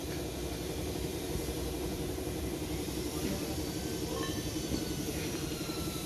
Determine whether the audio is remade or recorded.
remade